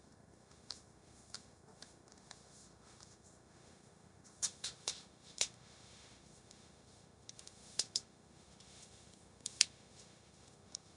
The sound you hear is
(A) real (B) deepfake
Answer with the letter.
B